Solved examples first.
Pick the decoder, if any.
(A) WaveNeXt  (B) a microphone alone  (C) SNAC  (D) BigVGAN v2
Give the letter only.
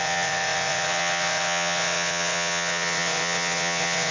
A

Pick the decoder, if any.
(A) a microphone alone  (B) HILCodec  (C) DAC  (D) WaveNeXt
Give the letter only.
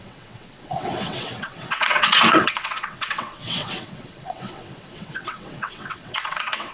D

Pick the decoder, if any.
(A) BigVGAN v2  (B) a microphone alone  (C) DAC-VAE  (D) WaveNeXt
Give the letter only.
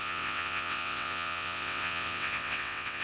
D